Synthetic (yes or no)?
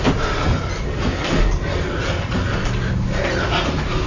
no